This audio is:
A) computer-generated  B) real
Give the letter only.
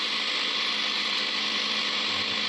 B